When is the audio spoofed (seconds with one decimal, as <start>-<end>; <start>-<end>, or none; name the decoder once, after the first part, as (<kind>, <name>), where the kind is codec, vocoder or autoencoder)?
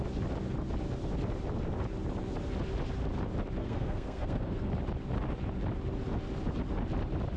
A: 3.6-4.7 (codec, SNAC)